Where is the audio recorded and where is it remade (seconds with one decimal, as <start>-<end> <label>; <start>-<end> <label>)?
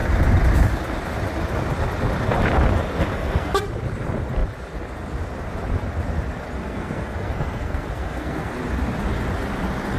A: 0.0-3.1 recorded; 3.1-3.6 remade; 3.6-6.6 recorded; 6.6-8.5 remade; 8.5-10.0 recorded